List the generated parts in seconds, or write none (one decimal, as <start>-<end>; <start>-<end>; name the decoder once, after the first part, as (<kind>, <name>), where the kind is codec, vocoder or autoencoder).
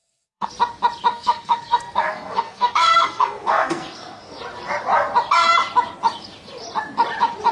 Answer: 0.0-0.5 (codec, SNAC); 1.1-4.4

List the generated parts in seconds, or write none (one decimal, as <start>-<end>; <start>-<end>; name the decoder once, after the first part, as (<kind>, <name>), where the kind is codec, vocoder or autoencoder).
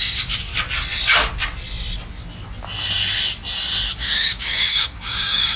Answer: 0.0-0.5 (codec, DAC); 3.9-5.6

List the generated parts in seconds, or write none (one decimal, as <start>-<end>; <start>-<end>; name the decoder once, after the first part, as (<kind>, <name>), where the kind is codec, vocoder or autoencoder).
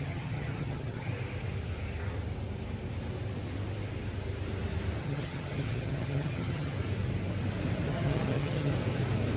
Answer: 0.0-1.1 (vocoder, HiFi-GAN); 5.0-6.7; 7.9-8.7